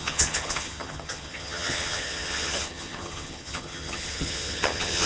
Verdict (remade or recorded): remade